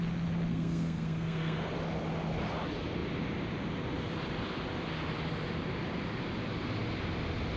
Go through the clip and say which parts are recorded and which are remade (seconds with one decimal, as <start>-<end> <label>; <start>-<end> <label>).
0.0-0.5 recorded; 0.5-1.7 remade; 1.7-7.6 recorded